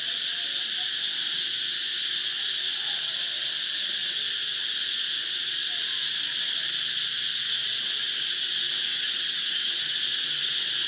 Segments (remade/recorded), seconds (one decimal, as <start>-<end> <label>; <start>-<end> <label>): 0.0-8.9 recorded; 8.9-10.0 remade; 10.0-10.9 recorded